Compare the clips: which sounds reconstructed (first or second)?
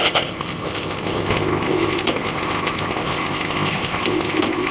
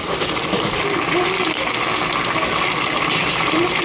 first